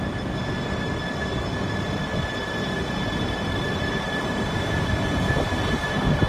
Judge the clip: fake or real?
real